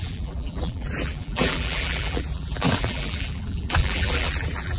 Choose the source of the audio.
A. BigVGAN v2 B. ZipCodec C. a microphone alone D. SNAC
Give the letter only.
A